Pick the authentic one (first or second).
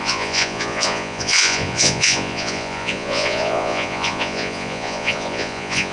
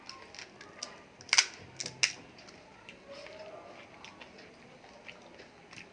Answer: second